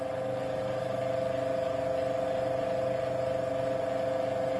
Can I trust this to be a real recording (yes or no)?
yes